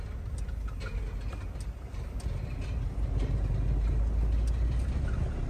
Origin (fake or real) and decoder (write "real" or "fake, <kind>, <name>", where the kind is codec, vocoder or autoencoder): real